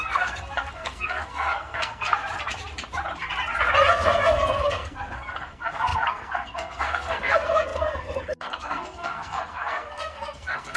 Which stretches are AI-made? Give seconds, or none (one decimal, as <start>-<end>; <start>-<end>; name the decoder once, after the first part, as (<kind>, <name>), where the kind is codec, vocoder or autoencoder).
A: 0.0-2.2 (codec, SNAC); 3.9-10.8